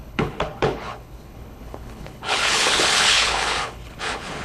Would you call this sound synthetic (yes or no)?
yes